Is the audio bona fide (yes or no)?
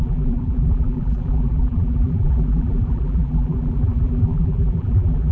no